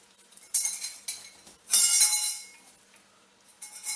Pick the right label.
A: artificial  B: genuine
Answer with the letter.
B